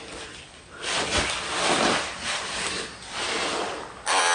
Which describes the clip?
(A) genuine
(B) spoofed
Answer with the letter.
A